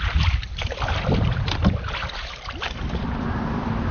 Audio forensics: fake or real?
real